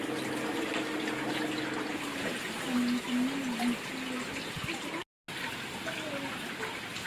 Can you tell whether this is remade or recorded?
recorded